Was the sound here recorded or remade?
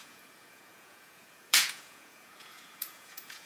remade